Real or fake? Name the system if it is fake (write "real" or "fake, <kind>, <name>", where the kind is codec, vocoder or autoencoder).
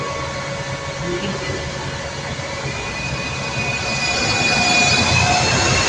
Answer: real